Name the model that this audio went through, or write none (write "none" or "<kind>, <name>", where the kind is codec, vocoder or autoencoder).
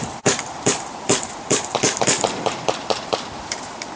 vocoder, BigVGAN v2